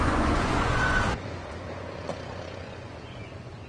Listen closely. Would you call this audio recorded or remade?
remade